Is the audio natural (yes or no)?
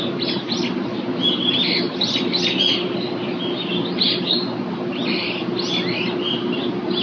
yes